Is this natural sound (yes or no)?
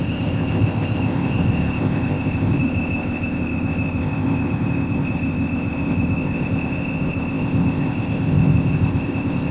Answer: no